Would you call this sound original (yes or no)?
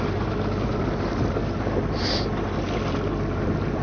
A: yes